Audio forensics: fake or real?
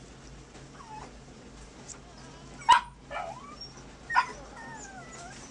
real